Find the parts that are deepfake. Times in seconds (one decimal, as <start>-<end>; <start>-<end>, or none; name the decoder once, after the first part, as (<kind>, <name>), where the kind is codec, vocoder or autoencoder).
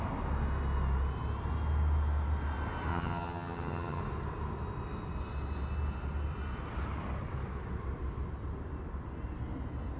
2.9-4.0 (vocoder, HiFi-GAN)